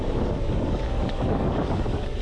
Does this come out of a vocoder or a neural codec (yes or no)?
yes